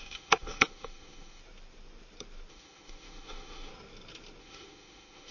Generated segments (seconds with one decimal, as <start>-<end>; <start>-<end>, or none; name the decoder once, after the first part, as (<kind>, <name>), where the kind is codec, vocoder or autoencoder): 0.0-1.4 (autoencoder, DAC-VAE); 2.5-3.7; 4.4-5.3